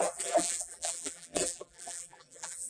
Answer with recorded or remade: remade